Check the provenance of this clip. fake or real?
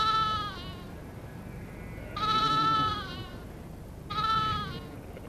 real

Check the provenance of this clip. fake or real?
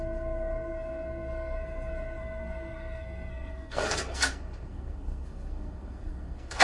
fake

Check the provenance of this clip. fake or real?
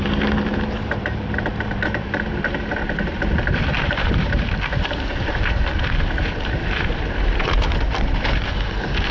fake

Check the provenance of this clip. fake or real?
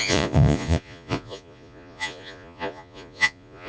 fake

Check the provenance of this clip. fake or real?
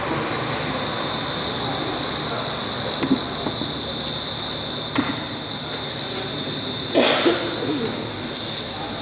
real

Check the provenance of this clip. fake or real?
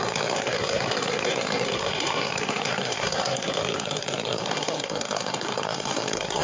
fake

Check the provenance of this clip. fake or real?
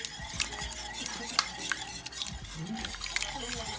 real